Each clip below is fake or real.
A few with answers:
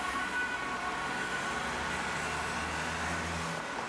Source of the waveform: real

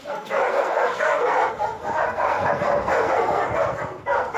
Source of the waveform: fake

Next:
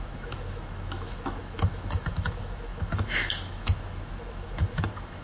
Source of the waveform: fake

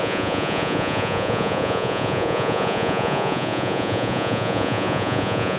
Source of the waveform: fake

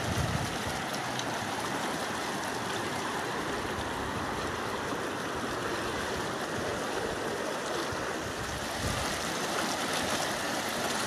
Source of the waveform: real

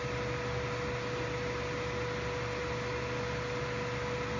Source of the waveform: real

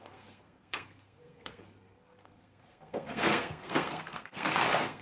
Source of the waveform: fake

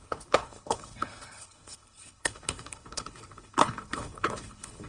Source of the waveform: fake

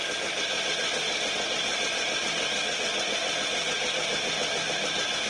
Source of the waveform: real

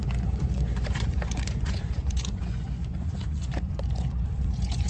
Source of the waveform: fake